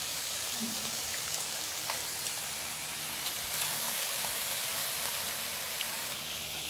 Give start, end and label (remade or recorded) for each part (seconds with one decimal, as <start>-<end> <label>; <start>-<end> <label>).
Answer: 0.0-2.0 remade; 2.0-3.6 recorded; 3.6-4.8 remade; 4.8-5.7 recorded; 5.7-6.7 remade